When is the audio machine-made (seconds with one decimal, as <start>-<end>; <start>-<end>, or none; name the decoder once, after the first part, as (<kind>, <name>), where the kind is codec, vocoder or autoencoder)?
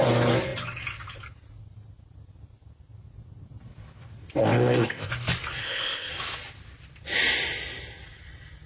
4.4-5.1 (codec, ZipCodec); 5.6-6.1